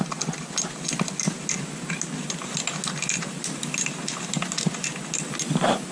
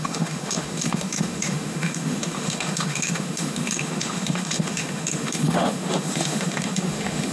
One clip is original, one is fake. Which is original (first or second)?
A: first